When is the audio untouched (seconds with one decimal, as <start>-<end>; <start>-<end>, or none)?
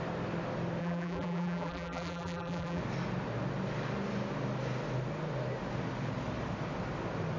0.0-0.8; 2.8-7.4